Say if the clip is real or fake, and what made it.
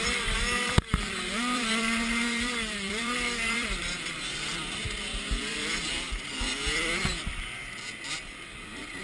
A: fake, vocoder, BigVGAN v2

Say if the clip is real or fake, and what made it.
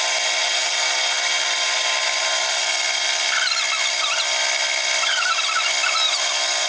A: fake, vocoder, BigVGAN v2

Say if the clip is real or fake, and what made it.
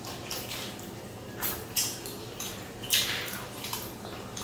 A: fake, vocoder, BigVGAN v2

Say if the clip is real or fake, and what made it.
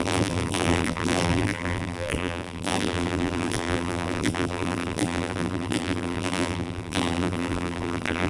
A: fake, vocoder, BigVGAN v2